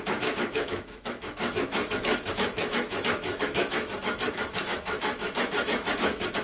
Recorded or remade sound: remade